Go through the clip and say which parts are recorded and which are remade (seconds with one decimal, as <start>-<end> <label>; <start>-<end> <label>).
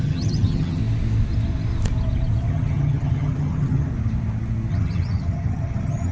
0.0-0.8 remade; 0.8-2.5 recorded; 2.5-3.9 remade; 3.9-4.7 recorded; 4.7-6.1 remade